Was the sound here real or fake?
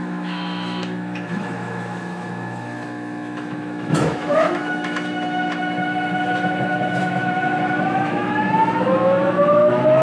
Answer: fake